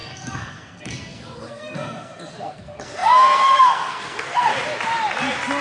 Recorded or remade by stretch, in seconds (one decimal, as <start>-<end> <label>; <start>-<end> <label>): 0.0-4.5 remade; 4.5-5.6 recorded